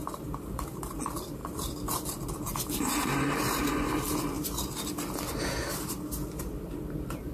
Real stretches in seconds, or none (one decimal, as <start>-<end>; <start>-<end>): 1.0-7.3